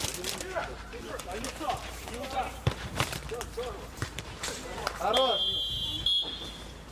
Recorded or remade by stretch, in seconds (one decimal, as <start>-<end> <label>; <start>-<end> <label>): 0.0-0.9 recorded; 0.9-5.0 remade; 5.0-6.9 recorded